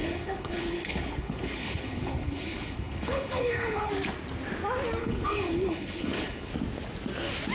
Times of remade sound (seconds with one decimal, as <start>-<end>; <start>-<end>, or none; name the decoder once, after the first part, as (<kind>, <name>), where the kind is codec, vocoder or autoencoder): 0.0-3.9 (codec, HILCodec); 5.0-6.5